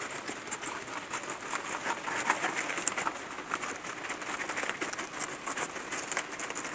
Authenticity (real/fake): real